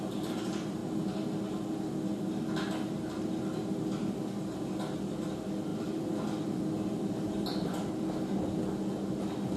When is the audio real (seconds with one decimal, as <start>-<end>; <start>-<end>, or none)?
0.0-5.7; 7.9-9.6